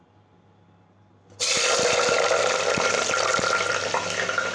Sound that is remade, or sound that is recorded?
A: recorded